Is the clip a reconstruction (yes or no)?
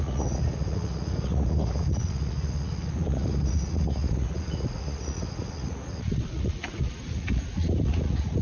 yes